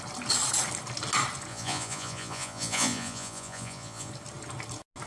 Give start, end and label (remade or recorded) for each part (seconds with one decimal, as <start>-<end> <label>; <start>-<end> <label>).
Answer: 0.0-1.5 recorded; 1.5-4.1 remade; 4.1-5.1 recorded